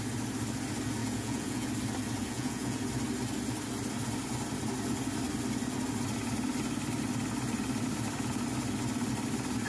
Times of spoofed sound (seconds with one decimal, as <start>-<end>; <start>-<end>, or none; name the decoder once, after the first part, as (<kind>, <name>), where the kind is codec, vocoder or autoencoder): 1.0-1.7 (vocoder, Vocos); 2.2-2.8